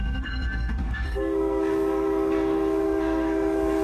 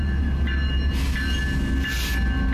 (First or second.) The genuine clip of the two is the second